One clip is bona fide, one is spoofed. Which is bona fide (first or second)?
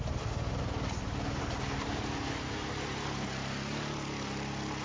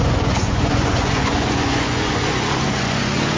first